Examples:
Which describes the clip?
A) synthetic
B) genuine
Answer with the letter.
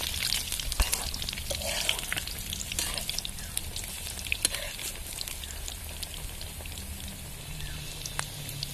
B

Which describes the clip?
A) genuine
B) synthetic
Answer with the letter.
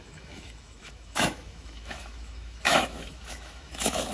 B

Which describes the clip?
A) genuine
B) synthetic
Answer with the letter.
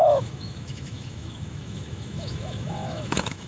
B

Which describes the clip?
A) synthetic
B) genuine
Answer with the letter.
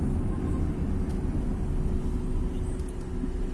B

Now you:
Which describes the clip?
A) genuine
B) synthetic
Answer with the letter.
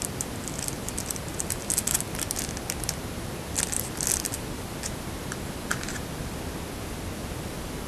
A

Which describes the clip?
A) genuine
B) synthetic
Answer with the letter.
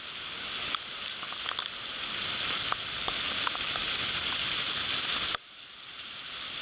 A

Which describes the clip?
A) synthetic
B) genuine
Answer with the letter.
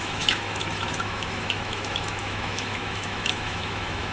A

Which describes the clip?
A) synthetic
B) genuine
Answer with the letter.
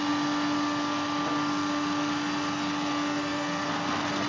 B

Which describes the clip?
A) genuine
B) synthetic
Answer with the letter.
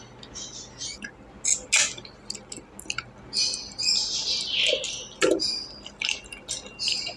A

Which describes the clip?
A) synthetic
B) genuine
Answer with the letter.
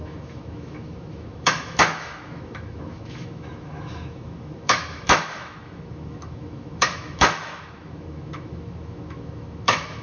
A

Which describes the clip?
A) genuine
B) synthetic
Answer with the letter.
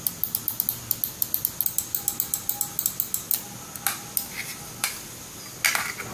A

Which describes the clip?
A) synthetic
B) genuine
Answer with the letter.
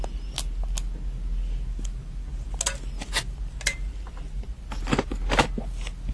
B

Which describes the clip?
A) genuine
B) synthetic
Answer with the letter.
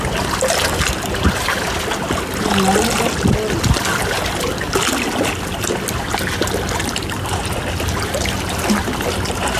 A